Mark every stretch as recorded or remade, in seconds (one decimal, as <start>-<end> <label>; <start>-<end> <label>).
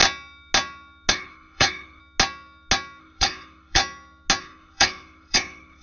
0.0-1.1 recorded; 1.1-2.0 remade; 2.0-3.0 recorded; 3.0-3.8 remade; 3.8-4.4 recorded; 4.4-5.8 remade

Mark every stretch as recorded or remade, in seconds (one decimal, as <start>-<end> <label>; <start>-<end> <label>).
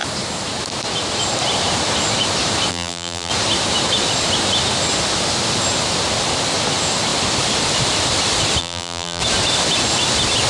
0.0-2.7 recorded; 2.7-3.3 remade; 3.3-8.6 recorded; 8.6-9.2 remade; 9.2-10.5 recorded